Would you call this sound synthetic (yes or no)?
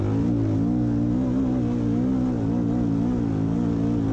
no